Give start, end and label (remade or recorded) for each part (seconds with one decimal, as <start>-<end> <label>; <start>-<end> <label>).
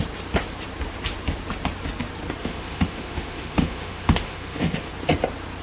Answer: 0.0-2.4 recorded; 2.4-4.9 remade; 4.9-5.6 recorded